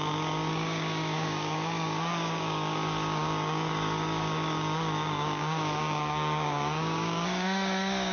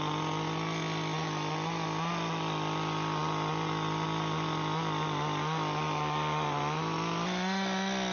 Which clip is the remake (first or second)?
first